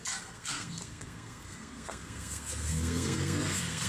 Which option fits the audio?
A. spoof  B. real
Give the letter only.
A